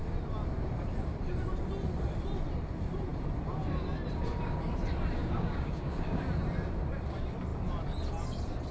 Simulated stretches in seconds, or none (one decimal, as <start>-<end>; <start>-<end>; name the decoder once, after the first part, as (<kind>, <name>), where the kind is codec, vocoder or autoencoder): 5.2-6.2 (codec, DAC)